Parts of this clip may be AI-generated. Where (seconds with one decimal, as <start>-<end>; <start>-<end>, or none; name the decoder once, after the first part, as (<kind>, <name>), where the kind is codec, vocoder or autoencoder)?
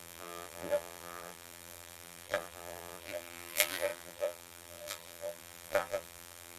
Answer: 0.0-6.6 (vocoder, BigVGAN v2)